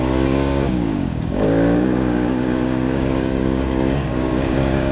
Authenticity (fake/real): fake